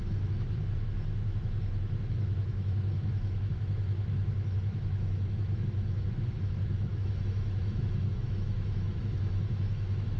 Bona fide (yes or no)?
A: no